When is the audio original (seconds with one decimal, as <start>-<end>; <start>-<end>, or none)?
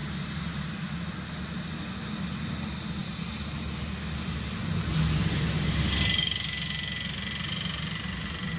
0.0-8.6